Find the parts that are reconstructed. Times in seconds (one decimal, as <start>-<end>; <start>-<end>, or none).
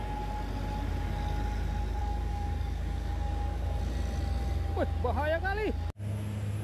2.0-3.8